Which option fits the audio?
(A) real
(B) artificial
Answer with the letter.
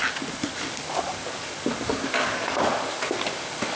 B